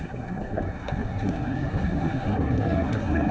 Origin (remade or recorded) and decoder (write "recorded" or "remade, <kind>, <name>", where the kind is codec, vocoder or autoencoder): remade, codec, SNAC